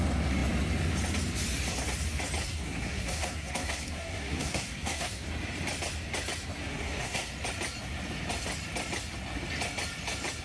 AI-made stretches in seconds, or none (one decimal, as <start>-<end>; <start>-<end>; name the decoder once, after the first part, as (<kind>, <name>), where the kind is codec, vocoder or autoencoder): 2.4-5.3 (codec, SNAC); 6.6-7.3